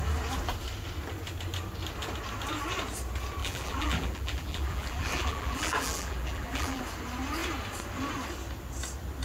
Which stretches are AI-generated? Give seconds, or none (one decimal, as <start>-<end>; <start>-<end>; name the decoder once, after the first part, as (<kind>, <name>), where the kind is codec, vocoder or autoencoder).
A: 3.4-6.8 (vocoder, BigVGAN v2)